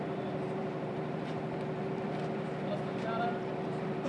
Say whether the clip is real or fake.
fake